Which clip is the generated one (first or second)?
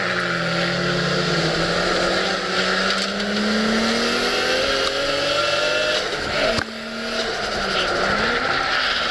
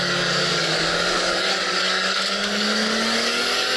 second